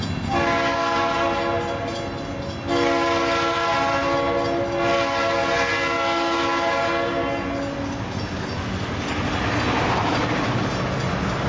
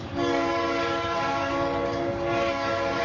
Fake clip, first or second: second